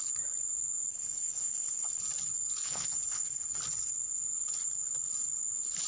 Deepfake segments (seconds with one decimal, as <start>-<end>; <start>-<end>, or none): 0.9-2.0; 2.6-3.5